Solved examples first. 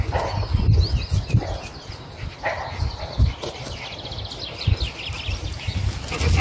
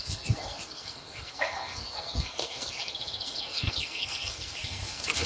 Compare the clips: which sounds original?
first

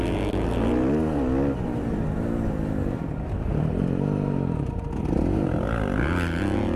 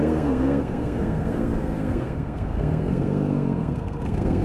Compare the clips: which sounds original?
first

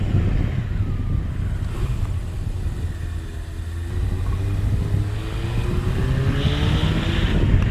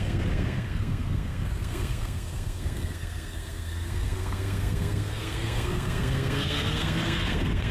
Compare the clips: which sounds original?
first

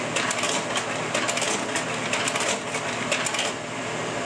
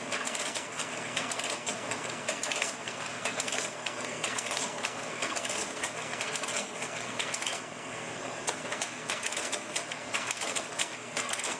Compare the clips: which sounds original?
first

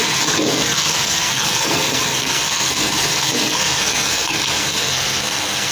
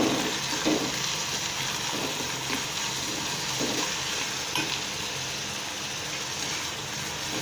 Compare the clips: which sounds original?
second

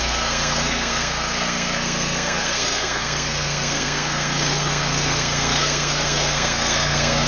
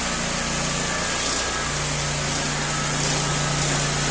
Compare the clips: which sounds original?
second